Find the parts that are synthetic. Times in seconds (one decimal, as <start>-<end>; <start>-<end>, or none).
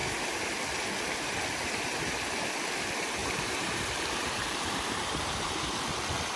3.2-5.5